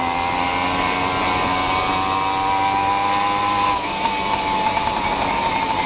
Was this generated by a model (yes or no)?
no